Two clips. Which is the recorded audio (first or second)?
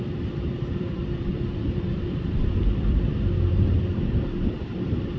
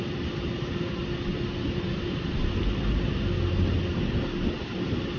second